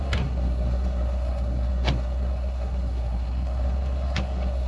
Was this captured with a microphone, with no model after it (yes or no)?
no